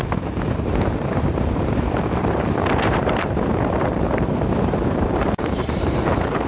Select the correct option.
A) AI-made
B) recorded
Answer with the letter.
A